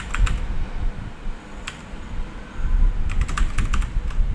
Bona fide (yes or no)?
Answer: yes